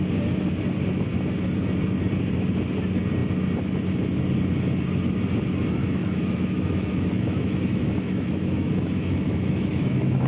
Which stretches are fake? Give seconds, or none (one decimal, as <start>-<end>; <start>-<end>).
5.8-10.3